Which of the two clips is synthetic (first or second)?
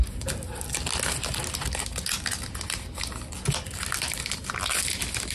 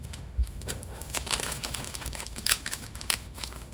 second